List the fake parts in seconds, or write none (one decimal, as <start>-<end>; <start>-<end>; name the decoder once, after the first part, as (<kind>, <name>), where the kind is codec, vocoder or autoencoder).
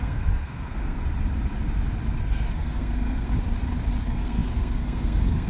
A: 0.0-1.0 (codec, SNAC); 2.2-3.3; 4.0-5.5